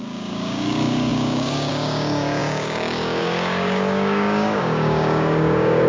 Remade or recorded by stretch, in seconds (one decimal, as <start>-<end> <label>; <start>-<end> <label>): 0.0-5.9 remade